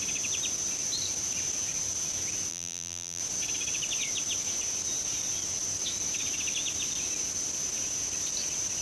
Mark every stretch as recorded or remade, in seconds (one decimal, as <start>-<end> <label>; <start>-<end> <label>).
0.0-2.5 recorded; 2.5-3.2 remade; 3.2-8.8 recorded